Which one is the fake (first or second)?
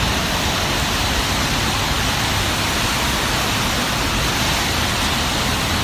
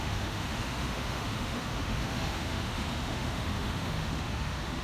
second